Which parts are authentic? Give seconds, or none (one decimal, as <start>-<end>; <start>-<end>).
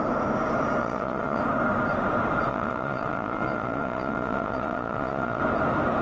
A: 0.0-0.8; 1.4-2.5; 5.4-6.0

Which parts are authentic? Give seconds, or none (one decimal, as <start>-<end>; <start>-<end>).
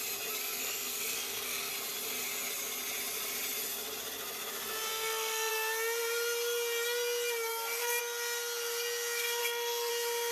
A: 0.0-0.4; 1.7-4.9; 5.5-7.5; 8.0-9.4; 9.9-10.3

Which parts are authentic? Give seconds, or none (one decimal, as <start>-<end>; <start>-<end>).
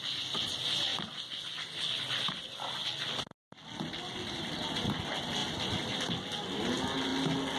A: 0.0-7.6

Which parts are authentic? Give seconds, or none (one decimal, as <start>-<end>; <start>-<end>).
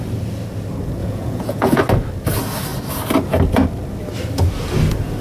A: 0.0-1.0; 1.8-5.2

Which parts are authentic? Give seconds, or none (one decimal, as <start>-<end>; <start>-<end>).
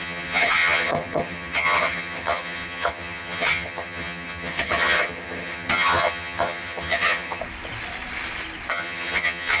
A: 7.4-8.7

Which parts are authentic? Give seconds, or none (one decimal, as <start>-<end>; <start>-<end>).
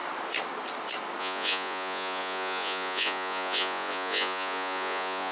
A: 0.0-1.2